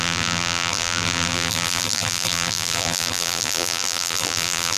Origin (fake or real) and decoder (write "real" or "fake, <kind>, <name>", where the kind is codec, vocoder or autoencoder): fake, vocoder, BigVGAN v2